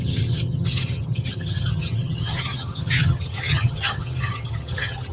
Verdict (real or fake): fake